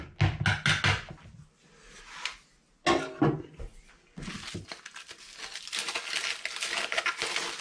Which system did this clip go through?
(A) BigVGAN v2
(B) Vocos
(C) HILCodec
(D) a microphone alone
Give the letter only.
D